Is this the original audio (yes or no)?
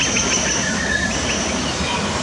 yes